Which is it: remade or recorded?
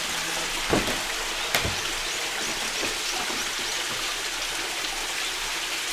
recorded